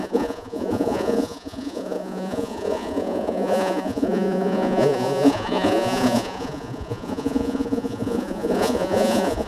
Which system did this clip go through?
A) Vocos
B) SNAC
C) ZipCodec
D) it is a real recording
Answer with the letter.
A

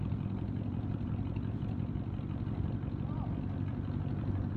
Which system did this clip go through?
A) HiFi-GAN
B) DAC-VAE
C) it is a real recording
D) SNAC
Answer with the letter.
C